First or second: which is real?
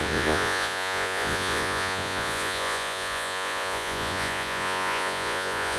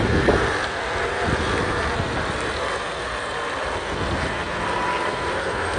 second